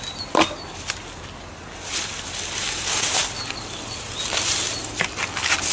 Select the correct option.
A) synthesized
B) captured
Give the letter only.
B